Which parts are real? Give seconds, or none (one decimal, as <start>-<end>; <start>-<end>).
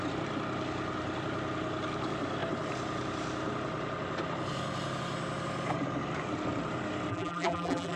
0.0-7.1